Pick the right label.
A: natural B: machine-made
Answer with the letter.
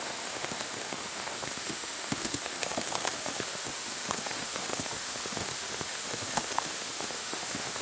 B